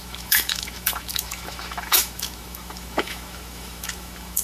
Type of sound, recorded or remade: remade